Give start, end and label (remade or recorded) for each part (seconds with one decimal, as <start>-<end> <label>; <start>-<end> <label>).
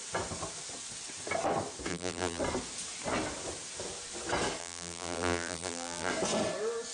0.0-1.9 recorded; 1.9-2.4 remade; 2.4-4.6 recorded; 4.6-6.1 remade; 6.1-6.9 recorded